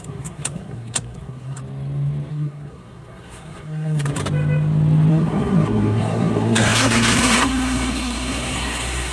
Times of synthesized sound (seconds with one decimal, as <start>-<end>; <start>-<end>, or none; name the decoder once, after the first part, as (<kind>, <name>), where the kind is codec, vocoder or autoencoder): 0.0-1.6 (codec, SNAC); 2.3-4.2; 5.1-9.1